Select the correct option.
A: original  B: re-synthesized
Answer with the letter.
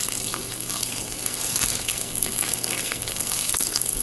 B